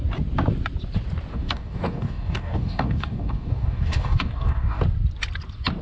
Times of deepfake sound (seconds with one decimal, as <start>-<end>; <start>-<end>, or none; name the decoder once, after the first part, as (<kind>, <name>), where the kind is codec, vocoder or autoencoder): 1.3-4.8 (codec, DAC)